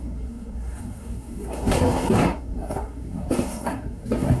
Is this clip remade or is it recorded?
remade